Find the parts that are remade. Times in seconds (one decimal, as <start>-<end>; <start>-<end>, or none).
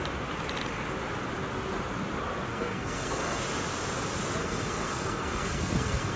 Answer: 2.5-3.4; 4.4-6.2